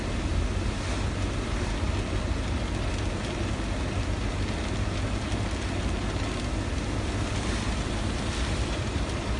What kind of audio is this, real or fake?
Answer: real